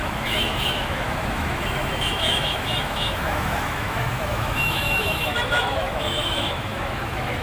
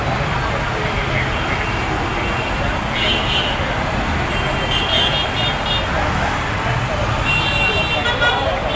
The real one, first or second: second